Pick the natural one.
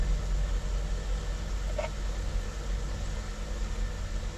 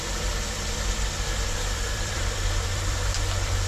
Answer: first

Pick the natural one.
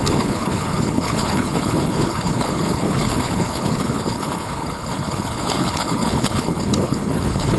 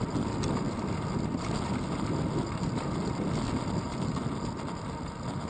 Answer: second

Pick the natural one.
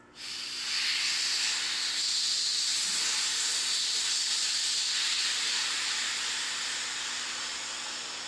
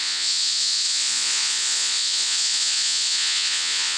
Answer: first